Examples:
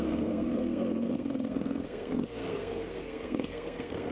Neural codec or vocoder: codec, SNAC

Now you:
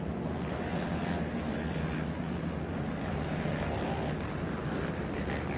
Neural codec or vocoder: none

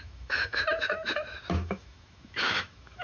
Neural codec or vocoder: autoencoder, DAC-VAE